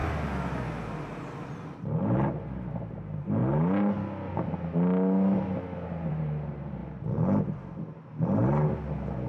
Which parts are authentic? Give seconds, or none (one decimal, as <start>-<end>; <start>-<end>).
0.0-1.5; 3.4-6.1; 6.8-7.4; 8.4-9.3